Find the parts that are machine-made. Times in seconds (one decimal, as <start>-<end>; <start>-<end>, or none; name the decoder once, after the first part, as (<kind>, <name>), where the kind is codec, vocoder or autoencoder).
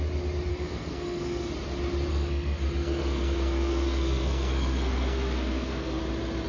0.5-1.5 (codec, SNAC); 2.1-6.0